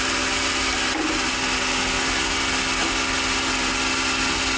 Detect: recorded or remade recorded